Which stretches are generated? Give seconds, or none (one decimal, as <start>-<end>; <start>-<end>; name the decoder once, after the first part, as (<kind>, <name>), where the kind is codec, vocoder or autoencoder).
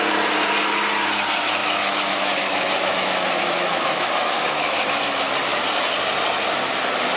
1.6-5.0 (autoencoder, DAC-VAE)